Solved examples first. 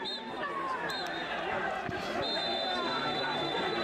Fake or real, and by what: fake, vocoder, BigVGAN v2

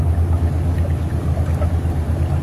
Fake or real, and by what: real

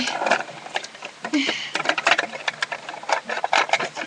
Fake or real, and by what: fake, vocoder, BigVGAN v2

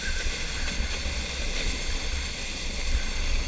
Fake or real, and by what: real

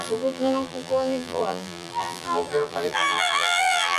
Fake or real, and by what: fake, vocoder, BigVGAN v2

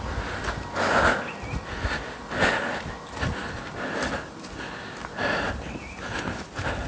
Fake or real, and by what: real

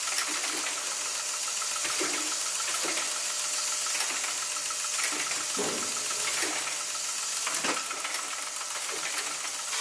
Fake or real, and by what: real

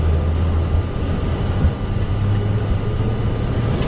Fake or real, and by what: real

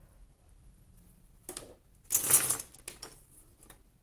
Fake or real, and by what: real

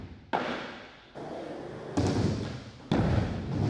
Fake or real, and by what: real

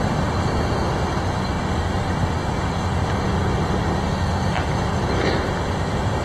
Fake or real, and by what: real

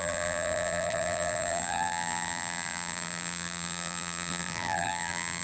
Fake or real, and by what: fake, vocoder, BigVGAN v2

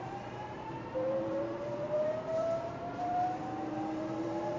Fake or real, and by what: fake, vocoder, BigVGAN v2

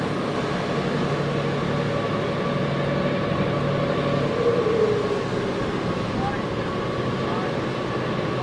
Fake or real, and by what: real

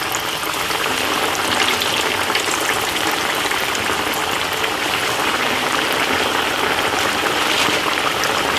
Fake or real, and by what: real